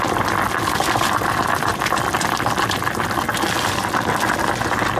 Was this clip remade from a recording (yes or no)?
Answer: no